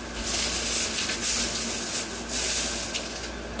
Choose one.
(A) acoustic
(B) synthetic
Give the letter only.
A